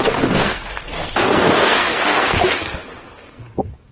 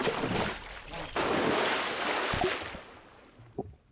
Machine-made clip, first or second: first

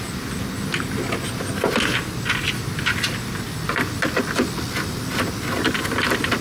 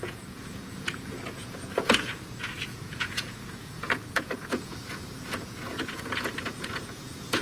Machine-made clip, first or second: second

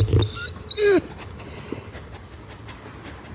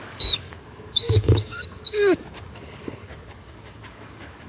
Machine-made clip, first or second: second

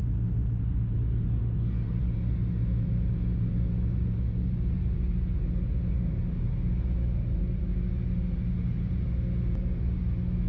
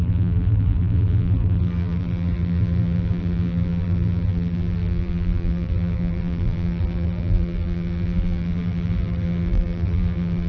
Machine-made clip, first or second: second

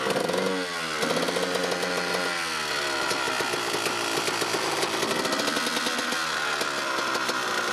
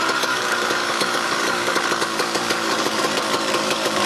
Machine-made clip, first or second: second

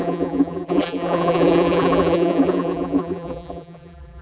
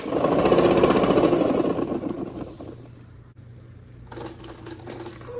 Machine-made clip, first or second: first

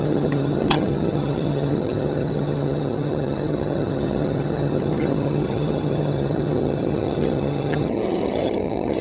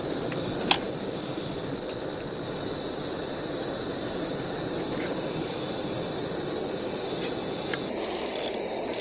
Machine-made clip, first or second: first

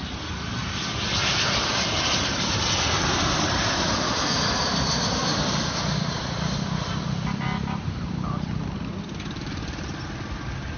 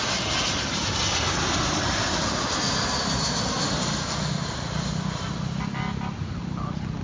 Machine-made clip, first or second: first